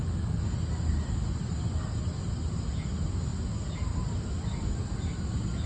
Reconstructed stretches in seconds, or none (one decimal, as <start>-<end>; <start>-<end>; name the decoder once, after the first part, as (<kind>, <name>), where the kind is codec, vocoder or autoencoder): none